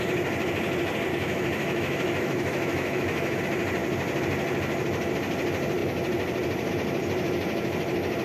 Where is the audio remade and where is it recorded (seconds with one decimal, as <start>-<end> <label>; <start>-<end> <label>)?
0.0-1.1 recorded; 1.1-3.4 remade; 3.4-8.2 recorded